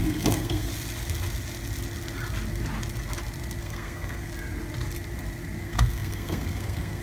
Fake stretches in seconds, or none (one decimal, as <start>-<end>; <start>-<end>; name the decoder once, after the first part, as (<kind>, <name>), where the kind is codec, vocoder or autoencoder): 0.0-0.7 (codec, SNAC); 3.6-4.3; 5.6-7.0

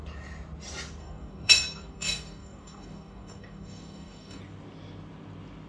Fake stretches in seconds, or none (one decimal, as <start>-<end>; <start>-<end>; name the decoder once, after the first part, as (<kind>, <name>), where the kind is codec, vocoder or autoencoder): 1.0-4.4 (codec, DAC)

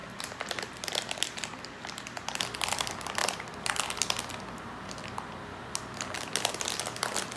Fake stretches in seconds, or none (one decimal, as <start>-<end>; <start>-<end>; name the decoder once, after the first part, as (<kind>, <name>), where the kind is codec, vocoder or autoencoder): 3.2-3.9 (vocoder, BigVGAN v2)

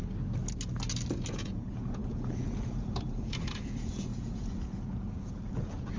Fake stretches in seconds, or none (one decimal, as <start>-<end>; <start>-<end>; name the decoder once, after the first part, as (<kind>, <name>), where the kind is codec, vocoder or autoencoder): 1.3-6.0 (vocoder, Vocos)

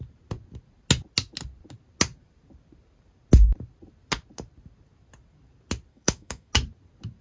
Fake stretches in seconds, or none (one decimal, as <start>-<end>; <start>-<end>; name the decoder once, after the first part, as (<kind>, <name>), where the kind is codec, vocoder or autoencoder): 5.9-6.5 (autoencoder, DAC-VAE)

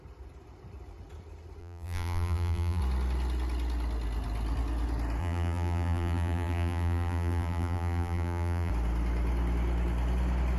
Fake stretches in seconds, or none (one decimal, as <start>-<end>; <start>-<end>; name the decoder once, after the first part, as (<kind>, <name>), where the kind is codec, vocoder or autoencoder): 1.6-2.8 (vocoder, BigVGAN v2); 5.2-8.7

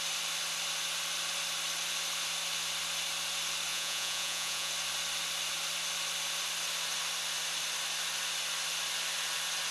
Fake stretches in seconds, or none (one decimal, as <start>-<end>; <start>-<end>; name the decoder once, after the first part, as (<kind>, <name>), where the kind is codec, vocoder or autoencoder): 3.7-4.7 (vocoder, Vocos)

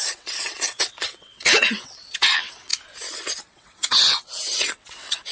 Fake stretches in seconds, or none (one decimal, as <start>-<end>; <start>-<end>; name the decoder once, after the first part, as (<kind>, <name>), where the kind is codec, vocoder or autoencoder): 0.0-2.7 (vocoder, WaveNeXt); 3.5-5.3